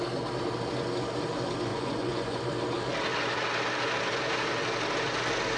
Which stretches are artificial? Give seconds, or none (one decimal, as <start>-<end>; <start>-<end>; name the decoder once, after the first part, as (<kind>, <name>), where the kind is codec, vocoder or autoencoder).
1.7-2.4 (vocoder, Vocos)